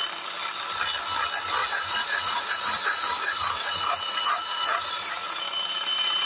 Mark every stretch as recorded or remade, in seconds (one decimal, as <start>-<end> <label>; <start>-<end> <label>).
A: 0.0-1.6 recorded; 1.6-5.4 remade; 5.4-6.3 recorded